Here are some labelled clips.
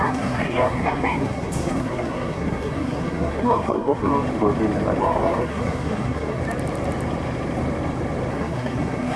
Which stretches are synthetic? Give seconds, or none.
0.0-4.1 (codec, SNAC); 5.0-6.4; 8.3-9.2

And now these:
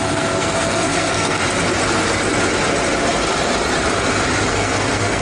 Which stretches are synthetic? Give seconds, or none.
0.0-1.4 (codec, SNAC); 4.5-5.2

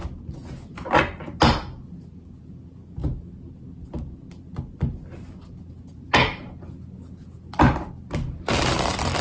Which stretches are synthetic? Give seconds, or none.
none

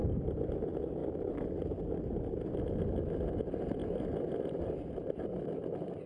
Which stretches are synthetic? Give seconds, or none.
none